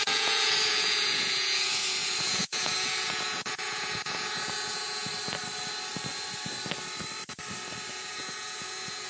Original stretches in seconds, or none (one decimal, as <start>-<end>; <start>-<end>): 5.1-7.9